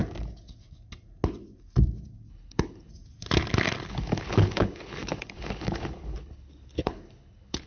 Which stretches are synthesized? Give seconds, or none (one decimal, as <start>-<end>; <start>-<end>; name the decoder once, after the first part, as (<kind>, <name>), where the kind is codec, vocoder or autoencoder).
2.3-2.9 (codec, HILCodec); 3.9-7.7